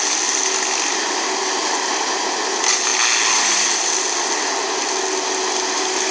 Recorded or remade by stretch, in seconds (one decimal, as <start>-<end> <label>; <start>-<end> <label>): 0.0-6.1 recorded